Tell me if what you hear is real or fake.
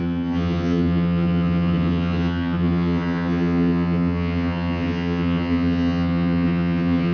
fake